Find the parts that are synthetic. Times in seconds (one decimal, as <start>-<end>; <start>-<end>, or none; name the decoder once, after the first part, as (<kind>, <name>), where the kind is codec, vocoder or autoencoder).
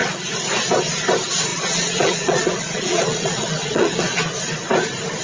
1.5-4.2 (vocoder, Vocos)